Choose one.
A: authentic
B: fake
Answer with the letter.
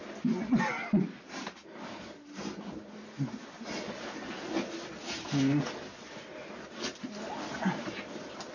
A